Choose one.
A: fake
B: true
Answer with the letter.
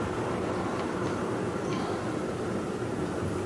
B